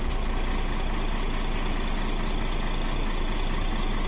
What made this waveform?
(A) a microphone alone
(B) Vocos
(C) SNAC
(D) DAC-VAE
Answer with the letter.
A